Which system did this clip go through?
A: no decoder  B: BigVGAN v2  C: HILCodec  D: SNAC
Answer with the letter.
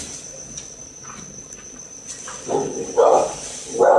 A